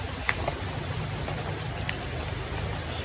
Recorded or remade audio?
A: recorded